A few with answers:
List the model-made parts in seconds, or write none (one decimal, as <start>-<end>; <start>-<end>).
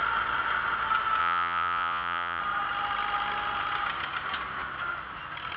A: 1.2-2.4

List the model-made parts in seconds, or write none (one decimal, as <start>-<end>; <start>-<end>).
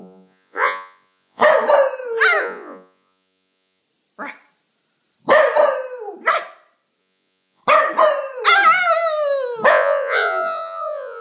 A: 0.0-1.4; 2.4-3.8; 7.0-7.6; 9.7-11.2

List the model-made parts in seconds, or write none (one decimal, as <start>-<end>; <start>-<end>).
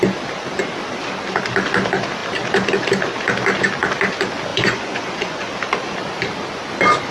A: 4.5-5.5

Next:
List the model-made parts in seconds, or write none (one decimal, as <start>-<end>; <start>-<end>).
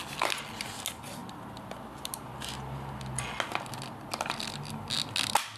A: none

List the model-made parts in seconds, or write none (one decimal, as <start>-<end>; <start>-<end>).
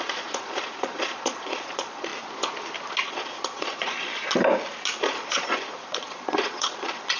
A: 0.0-2.1; 3.0-4.1; 5.0-7.2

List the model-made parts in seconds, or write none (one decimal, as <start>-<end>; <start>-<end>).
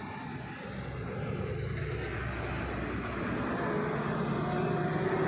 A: none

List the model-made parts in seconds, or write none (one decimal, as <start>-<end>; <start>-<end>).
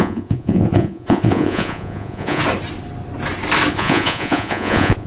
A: 0.0-2.4; 3.7-5.1